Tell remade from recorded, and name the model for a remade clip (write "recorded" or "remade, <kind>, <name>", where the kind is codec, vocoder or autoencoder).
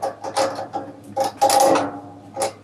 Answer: recorded